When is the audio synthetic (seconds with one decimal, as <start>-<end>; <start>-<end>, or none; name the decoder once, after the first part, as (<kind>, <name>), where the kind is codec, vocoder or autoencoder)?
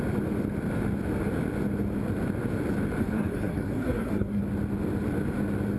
3.0-4.4 (codec, SNAC)